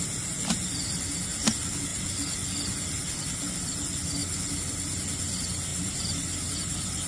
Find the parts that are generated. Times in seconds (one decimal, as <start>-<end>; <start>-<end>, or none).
5.7-7.1